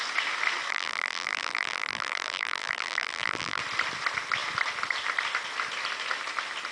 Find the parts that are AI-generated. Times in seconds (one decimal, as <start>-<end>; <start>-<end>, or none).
0.7-3.6